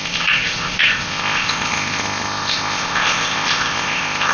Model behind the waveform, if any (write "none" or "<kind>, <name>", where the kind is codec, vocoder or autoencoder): codec, ZipCodec